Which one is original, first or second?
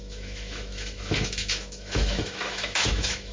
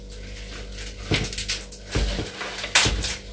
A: second